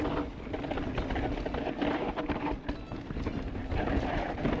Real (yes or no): yes